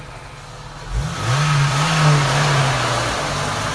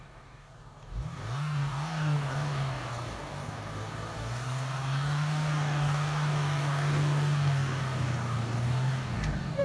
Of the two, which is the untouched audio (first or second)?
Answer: first